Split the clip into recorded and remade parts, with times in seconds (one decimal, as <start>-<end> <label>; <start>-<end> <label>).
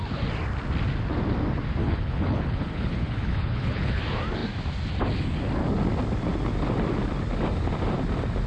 0.0-1.8 recorded; 1.8-4.0 remade; 4.0-8.5 recorded